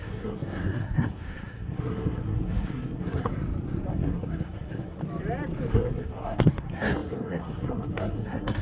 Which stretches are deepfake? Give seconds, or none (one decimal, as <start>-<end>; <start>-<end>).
0.0-3.3; 3.9-5.0; 5.7-8.6